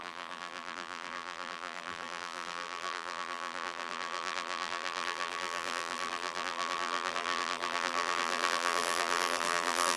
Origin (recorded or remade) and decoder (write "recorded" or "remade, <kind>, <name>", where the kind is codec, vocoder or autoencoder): remade, vocoder, BigVGAN v2